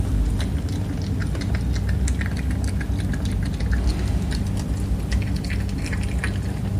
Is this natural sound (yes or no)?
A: yes